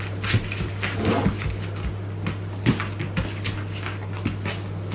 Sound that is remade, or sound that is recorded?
recorded